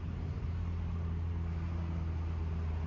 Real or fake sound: real